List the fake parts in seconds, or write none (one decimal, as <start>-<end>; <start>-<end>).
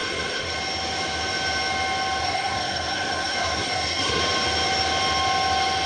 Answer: 0.0-0.5; 2.2-4.2